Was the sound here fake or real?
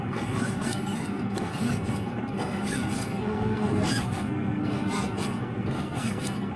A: fake